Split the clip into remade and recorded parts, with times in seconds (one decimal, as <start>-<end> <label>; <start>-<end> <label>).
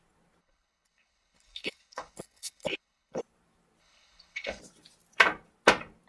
0.0-0.4 recorded; 0.4-3.2 remade; 3.2-3.8 recorded; 3.8-4.6 remade; 4.6-6.1 recorded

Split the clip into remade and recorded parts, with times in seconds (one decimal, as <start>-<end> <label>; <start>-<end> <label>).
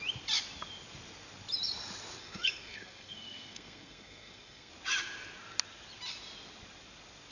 0.0-2.2 recorded; 2.2-4.7 remade; 4.7-7.3 recorded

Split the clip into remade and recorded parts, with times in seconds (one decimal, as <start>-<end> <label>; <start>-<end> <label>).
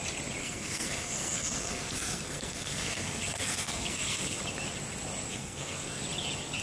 0.0-0.4 recorded; 0.4-4.4 remade; 4.4-5.3 recorded; 5.3-6.0 remade; 6.0-6.6 recorded